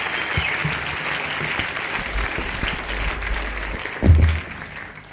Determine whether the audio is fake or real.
real